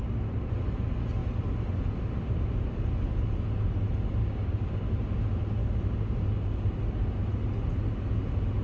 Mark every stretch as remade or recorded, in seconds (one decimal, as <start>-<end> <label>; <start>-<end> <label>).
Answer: 0.0-4.2 recorded; 4.2-4.8 remade; 4.8-5.6 recorded; 5.6-6.6 remade; 6.6-8.6 recorded